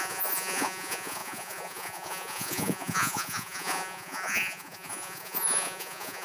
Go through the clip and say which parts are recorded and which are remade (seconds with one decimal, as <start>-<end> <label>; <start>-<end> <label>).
0.0-6.2 remade